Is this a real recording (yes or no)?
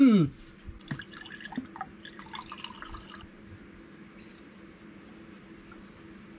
yes